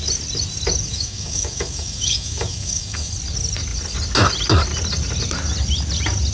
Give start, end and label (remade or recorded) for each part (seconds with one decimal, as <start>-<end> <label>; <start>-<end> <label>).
0.0-0.9 recorded; 0.9-3.1 remade; 3.1-6.3 recorded